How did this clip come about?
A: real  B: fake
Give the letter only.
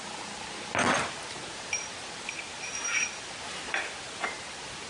A